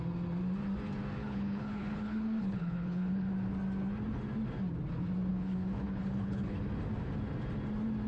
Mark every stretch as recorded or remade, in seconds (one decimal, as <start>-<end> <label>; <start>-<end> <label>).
0.0-1.2 recorded; 1.2-3.3 remade; 3.3-5.3 recorded; 5.3-6.7 remade; 6.7-8.1 recorded